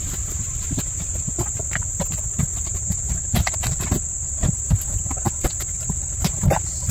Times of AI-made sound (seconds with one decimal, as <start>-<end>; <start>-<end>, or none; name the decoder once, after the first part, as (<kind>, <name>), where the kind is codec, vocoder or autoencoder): none